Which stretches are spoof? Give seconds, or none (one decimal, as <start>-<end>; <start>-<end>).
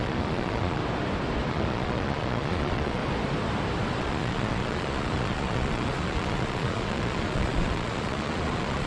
0.0-0.8; 1.5-3.0; 4.0-8.9